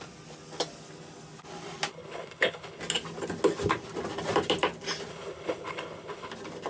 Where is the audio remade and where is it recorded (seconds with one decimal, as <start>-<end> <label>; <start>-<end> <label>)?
0.0-1.9 recorded; 1.9-2.8 remade; 2.8-5.1 recorded; 5.1-6.3 remade; 6.3-6.7 recorded